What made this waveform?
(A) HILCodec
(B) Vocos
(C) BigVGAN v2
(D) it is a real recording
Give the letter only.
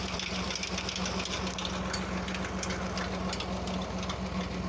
D